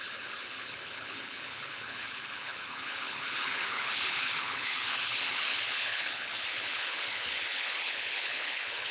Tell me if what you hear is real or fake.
fake